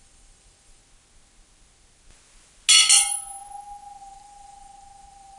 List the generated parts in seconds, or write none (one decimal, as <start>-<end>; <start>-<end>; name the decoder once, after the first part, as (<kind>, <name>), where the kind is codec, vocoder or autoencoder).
0.0-0.8 (vocoder, BigVGAN v2); 4.0-5.4